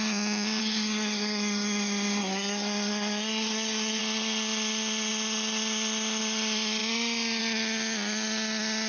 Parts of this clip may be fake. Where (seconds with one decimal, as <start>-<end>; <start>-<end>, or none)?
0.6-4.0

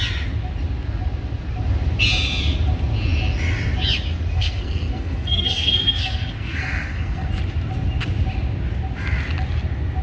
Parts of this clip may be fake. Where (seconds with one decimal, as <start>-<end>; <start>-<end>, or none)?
4.3-7.3

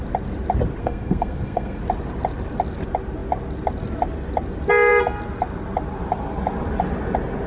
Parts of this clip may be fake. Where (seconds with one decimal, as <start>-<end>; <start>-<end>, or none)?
0.8-1.8

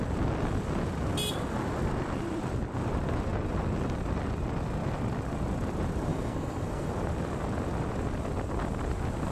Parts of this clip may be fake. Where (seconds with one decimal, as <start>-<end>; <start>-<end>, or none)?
6.1-6.9

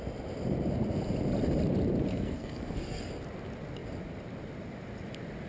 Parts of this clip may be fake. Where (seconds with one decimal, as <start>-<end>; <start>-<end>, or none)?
2.1-3.1

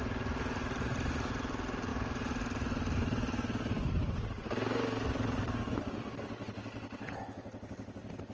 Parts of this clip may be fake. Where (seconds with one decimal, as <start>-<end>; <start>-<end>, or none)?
none